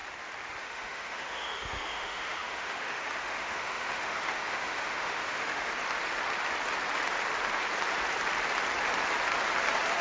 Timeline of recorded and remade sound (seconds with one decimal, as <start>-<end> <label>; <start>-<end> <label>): 0.0-0.6 recorded; 0.6-5.7 remade; 5.7-10.0 recorded